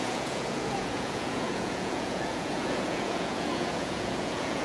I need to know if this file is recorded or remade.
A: remade